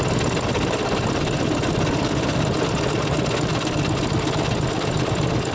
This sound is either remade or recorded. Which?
recorded